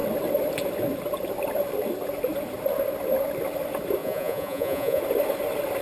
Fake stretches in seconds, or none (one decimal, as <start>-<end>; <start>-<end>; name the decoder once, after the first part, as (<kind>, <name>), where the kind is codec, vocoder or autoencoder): 4.0-5.0 (vocoder, Vocos)